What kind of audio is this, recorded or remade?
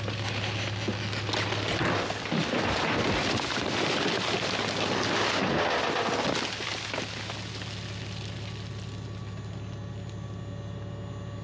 recorded